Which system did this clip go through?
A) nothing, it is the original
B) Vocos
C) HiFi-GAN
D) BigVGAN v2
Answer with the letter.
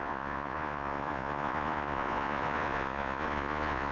B